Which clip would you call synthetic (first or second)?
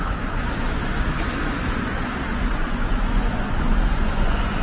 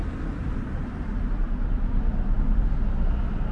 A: first